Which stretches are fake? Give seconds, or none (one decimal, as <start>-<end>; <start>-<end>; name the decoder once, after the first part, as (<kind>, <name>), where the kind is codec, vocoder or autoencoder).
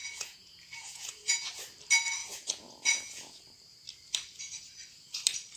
0.0-1.5 (vocoder, Vocos); 2.2-3.4